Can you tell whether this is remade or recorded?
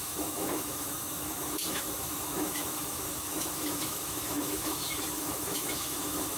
remade